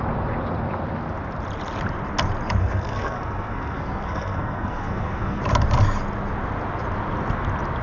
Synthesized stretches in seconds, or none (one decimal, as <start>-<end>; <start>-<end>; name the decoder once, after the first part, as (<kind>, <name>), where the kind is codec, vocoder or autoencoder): 2.6-5.4 (codec, SNAC)